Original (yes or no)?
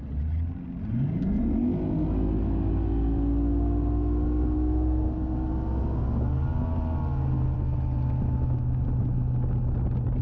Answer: yes